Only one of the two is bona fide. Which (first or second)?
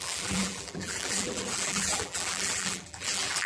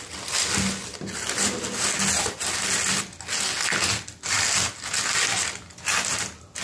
second